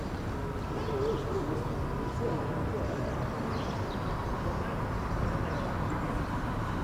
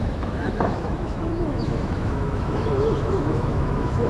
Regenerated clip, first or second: second